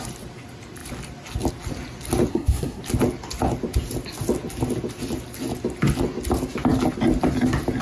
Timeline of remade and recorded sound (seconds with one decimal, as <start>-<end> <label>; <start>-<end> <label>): 0.0-2.3 recorded; 2.3-2.8 remade; 2.8-7.8 recorded

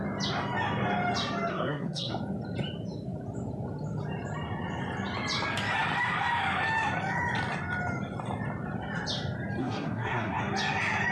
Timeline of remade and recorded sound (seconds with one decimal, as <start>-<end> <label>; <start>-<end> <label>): 0.0-1.5 recorded; 1.5-2.1 remade; 2.1-9.6 recorded; 9.6-10.4 remade; 10.4-11.1 recorded